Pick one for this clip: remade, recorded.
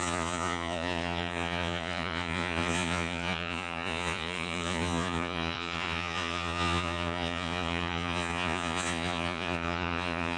remade